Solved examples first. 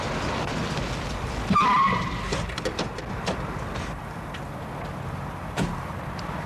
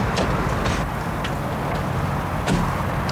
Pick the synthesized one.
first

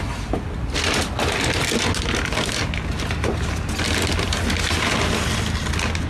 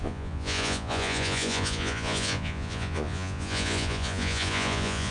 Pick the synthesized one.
second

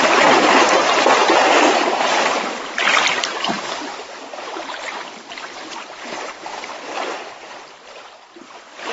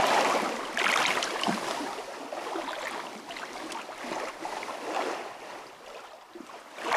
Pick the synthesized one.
first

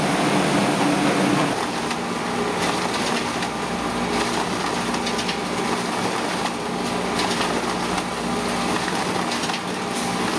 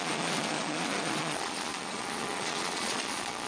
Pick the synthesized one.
second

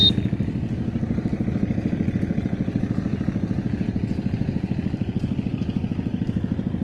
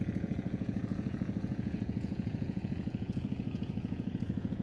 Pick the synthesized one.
second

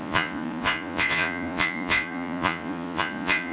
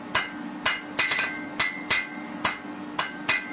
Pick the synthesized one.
first